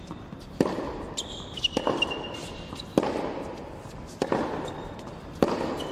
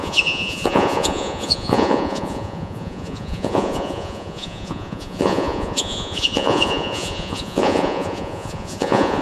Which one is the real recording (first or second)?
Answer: first